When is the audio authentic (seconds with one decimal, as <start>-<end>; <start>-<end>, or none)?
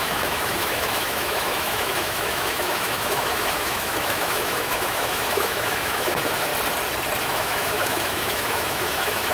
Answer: 6.5-7.2